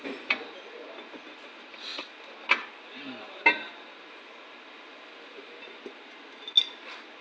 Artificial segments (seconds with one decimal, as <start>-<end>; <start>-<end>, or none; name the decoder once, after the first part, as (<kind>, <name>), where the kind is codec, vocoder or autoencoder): none